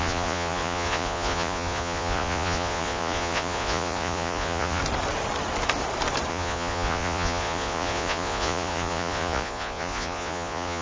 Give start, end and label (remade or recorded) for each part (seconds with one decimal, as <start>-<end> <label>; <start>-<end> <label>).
0.0-4.8 remade; 4.8-6.3 recorded; 6.3-10.8 remade